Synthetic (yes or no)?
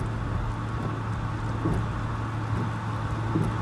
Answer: no